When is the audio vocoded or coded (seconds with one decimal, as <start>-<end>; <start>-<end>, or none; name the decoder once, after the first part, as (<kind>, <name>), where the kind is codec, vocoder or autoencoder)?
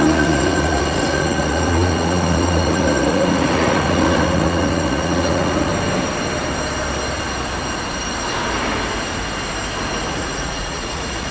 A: 0.0-5.7 (vocoder, Vocos); 10.1-11.3